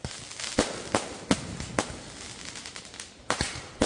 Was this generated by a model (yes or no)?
no